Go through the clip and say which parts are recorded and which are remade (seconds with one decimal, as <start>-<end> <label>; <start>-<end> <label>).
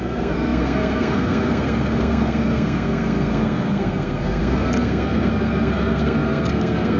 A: 0.0-7.0 remade